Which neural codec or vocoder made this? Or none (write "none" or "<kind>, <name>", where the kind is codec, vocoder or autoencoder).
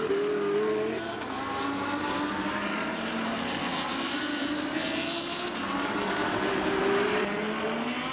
none